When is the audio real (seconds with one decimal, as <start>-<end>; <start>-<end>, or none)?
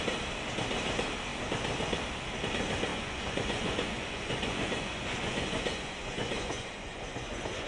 0.0-2.9